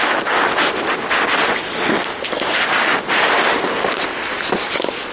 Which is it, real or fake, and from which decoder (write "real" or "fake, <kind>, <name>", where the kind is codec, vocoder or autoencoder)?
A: real